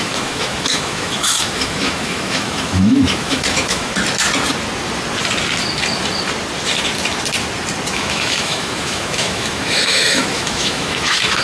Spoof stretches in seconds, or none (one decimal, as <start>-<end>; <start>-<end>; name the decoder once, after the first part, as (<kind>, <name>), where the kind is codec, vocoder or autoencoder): 0.0-3.9 (autoencoder, DAC-VAE); 7.9-11.4